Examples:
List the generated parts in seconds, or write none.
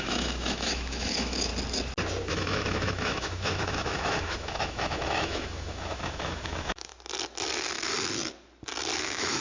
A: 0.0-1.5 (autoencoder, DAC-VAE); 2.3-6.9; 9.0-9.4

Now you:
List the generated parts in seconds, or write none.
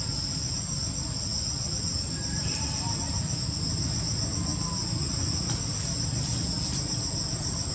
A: none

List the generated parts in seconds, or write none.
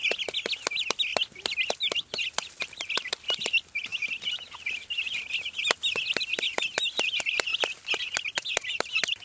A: 3.9-5.6 (vocoder, BigVGAN v2)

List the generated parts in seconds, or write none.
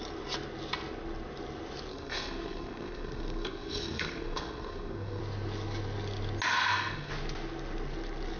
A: 1.9-5.2 (codec, SNAC); 6.5-7.1